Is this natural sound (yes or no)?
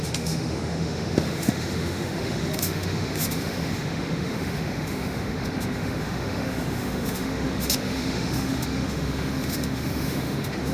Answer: no